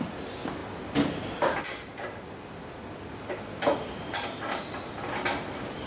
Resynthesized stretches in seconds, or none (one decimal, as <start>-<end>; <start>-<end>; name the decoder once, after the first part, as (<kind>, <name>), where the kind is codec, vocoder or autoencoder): none